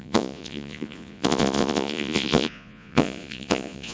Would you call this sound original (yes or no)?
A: no